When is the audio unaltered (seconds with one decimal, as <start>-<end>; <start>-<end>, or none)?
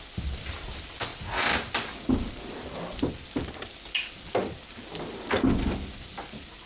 0.0-6.7